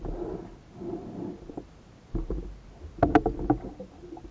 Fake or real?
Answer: real